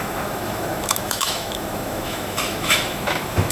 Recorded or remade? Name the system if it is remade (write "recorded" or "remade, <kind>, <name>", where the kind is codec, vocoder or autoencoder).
remade, autoencoder, DAC-VAE